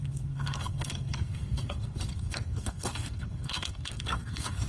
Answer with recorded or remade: remade